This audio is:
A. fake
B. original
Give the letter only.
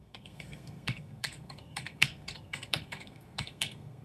A